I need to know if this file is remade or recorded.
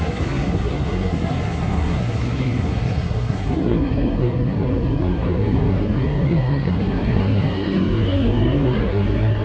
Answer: remade